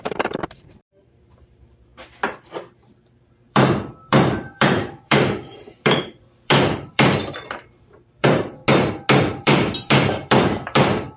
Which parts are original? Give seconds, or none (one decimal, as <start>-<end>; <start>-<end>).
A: 1.9-2.4; 8.6-9.2